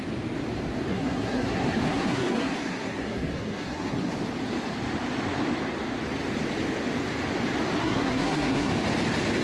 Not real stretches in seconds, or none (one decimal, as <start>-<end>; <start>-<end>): 0.9-4.1; 7.8-8.7